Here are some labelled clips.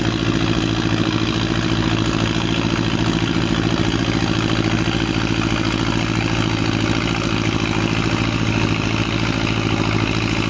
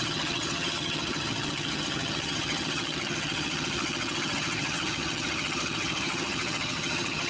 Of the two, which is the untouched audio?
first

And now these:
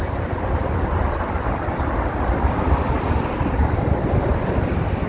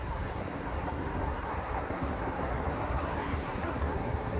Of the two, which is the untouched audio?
first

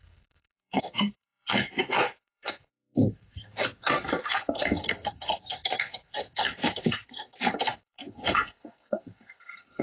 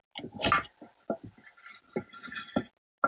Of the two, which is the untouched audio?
second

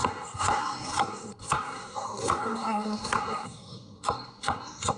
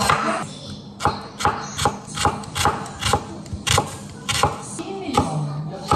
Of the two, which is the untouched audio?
second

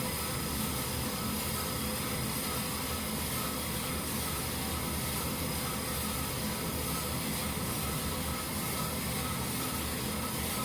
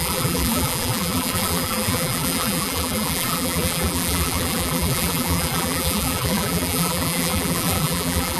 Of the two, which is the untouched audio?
first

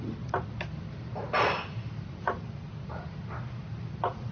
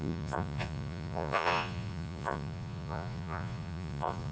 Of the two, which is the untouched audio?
first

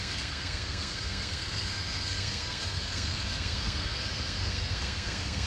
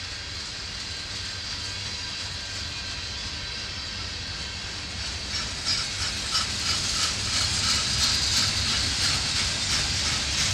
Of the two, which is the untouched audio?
second